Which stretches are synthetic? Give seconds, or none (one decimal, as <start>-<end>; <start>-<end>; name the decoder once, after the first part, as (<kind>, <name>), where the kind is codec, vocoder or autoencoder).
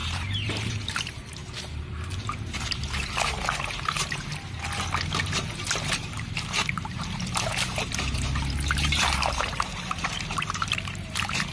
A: 0.0-1.4 (vocoder, BigVGAN v2); 2.2-4.6; 5.4-11.5